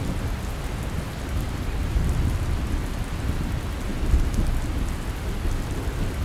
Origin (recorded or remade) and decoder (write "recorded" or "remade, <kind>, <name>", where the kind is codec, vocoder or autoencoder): recorded